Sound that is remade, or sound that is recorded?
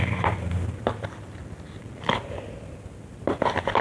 remade